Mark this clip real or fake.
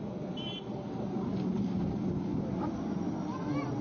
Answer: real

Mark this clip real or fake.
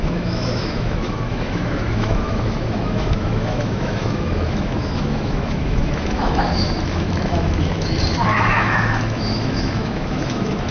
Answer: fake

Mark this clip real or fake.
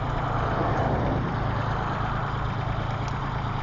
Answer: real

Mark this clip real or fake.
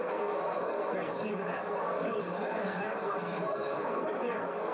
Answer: fake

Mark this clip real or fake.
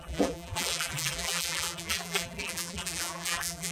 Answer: fake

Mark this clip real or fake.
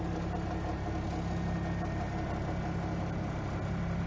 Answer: real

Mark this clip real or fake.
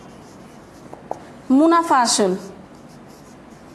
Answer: real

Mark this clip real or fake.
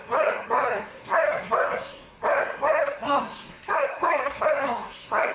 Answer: fake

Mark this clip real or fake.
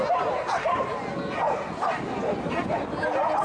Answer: real